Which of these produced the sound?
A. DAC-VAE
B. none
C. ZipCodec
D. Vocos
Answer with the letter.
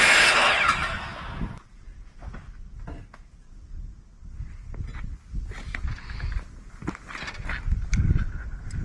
B